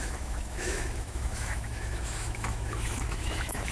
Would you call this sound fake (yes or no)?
yes